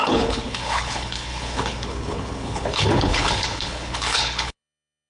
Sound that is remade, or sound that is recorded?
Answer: remade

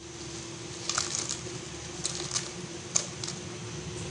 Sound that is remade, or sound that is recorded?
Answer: recorded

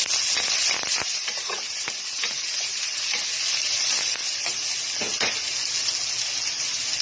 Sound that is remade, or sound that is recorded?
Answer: recorded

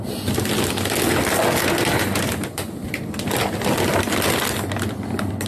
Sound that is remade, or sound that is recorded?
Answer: recorded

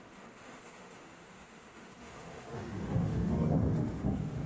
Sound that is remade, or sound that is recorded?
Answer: remade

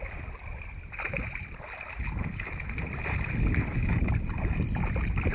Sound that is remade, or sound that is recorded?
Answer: recorded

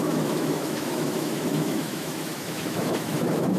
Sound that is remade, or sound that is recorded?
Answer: remade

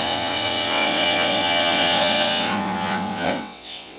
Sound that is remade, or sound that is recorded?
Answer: remade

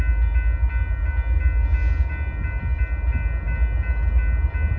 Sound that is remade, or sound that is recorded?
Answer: recorded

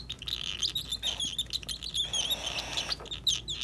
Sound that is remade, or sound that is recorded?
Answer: recorded